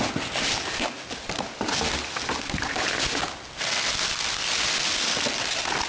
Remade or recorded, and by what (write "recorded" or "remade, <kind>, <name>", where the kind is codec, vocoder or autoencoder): recorded